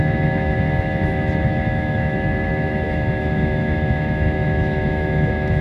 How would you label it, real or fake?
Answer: fake